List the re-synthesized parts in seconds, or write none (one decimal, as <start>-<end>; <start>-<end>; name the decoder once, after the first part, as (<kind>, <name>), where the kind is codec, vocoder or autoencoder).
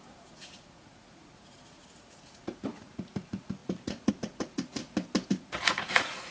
0.0-4.8 (vocoder, Vocos); 5.3-6.3